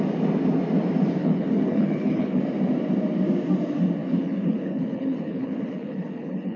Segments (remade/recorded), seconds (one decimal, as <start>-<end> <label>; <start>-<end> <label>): 0.0-1.2 recorded; 1.2-2.4 remade; 2.4-4.0 recorded; 4.0-6.6 remade